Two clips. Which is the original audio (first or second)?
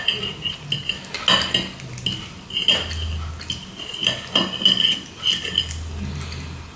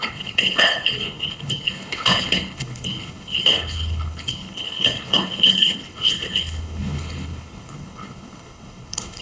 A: first